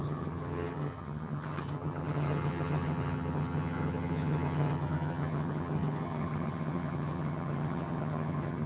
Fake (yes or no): yes